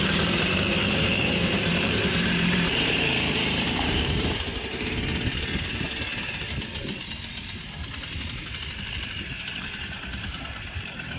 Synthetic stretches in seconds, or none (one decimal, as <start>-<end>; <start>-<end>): 0.0-5.1; 9.2-11.2